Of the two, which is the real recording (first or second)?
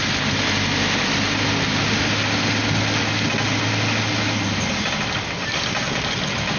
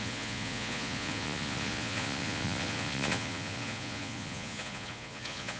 first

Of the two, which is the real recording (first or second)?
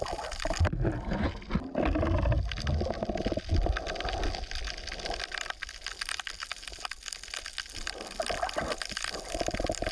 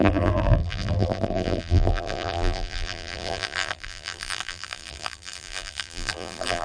first